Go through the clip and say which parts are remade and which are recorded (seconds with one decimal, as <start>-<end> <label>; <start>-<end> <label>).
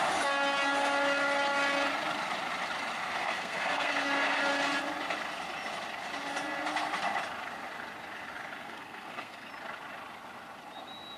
0.0-3.2 recorded; 3.2-3.9 remade; 3.9-8.6 recorded; 8.6-9.5 remade; 9.5-11.2 recorded